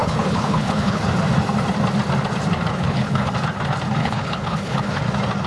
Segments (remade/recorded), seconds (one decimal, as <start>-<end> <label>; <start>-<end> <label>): 0.0-1.0 remade; 1.0-2.7 recorded; 2.7-3.3 remade; 3.3-4.0 recorded; 4.0-5.0 remade; 5.0-5.5 recorded